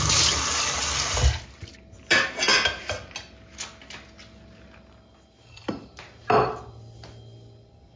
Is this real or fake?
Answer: real